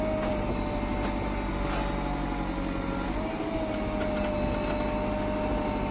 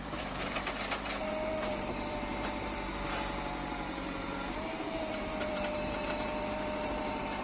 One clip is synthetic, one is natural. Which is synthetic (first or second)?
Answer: second